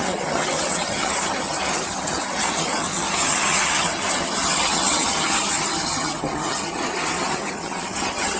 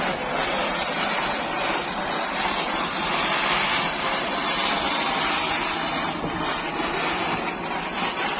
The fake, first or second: first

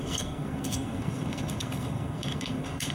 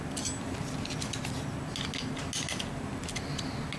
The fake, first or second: first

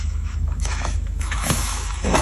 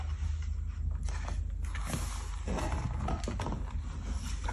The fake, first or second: first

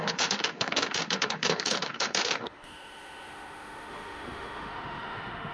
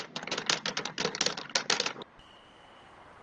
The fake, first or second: first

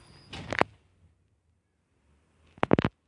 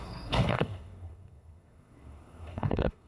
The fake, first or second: second